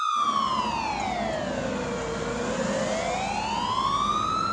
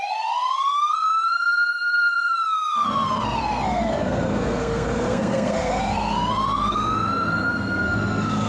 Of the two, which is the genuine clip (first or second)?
first